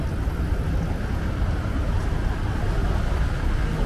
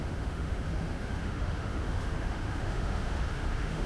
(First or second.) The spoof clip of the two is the second